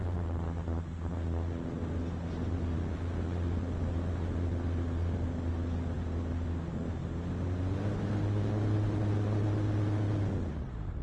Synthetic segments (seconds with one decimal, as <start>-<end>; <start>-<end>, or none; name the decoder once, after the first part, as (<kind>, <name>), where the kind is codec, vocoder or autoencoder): none